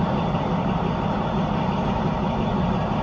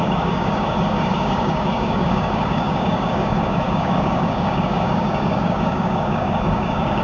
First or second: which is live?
first